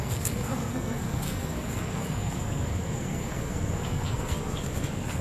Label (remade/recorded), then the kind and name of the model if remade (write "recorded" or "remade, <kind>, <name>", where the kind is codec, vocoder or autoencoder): remade, codec, SNAC